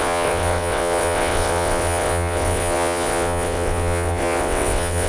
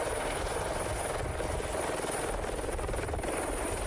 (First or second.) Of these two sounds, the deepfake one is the first